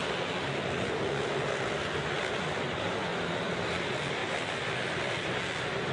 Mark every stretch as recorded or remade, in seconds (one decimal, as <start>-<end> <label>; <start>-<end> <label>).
0.0-3.1 recorded; 3.1-3.7 remade; 3.7-4.2 recorded; 4.2-5.4 remade; 5.4-5.9 recorded